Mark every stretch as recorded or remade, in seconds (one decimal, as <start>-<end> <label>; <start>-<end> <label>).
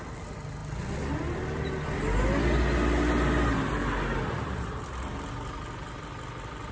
0.0-6.7 recorded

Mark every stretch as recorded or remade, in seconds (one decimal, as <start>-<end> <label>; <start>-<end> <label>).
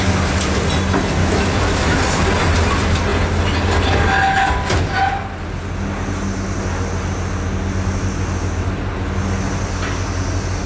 0.0-1.2 recorded; 1.2-2.0 remade; 2.0-10.7 recorded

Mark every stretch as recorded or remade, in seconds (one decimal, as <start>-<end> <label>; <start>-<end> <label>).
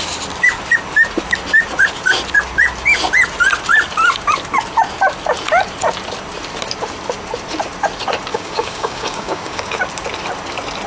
0.0-8.3 recorded; 8.3-9.8 remade; 9.8-10.9 recorded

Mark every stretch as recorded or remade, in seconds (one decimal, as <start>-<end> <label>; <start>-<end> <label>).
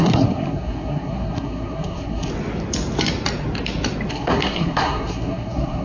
0.0-2.3 remade; 2.3-4.1 recorded; 4.1-5.8 remade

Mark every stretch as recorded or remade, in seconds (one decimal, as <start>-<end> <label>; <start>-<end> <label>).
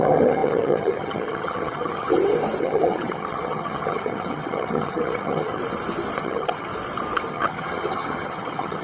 0.0-2.1 remade; 2.1-2.6 recorded; 2.6-5.6 remade; 5.6-6.2 recorded; 6.2-6.7 remade; 6.7-7.3 recorded; 7.3-8.8 remade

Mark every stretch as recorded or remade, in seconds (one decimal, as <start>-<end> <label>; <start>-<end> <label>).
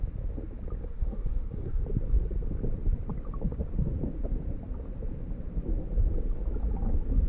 0.0-0.8 recorded; 0.8-1.8 remade; 1.8-7.3 recorded